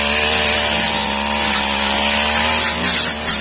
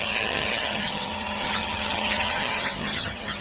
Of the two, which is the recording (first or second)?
first